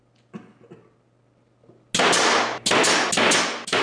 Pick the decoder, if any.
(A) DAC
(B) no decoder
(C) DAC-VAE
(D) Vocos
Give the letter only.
B